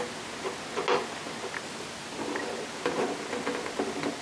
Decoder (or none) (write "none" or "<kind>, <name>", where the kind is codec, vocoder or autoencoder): none